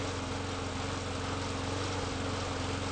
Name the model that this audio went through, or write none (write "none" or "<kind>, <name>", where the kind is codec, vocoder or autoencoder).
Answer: none